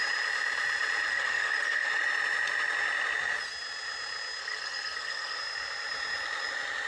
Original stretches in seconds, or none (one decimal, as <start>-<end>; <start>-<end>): 0.0-1.1; 1.9-4.4; 5.4-6.9